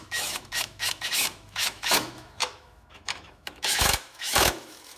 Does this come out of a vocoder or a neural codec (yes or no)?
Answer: yes